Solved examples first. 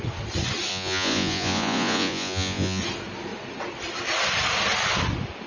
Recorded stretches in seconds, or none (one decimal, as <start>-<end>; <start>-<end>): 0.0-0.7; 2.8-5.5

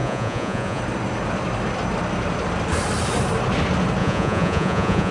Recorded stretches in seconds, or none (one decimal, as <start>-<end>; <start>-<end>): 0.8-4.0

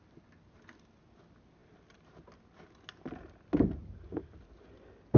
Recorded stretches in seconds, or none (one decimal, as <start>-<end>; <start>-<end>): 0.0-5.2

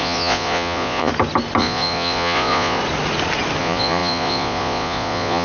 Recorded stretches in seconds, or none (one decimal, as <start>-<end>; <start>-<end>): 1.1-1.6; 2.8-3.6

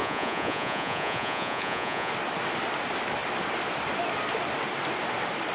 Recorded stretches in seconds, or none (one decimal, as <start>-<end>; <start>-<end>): 2.1-5.5

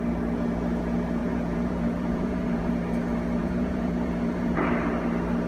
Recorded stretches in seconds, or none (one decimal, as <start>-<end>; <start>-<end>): 0.0-1.2; 2.7-3.4; 4.7-5.5

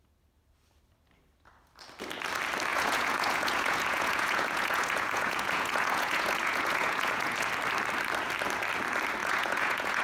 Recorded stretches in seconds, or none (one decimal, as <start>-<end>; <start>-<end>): 0.0-2.7; 7.5-9.2

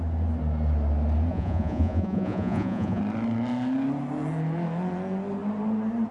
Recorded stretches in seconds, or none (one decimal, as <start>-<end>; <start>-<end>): 0.0-1.3; 3.0-6.1